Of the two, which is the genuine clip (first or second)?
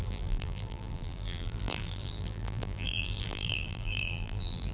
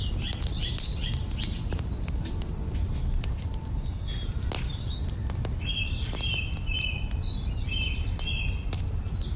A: second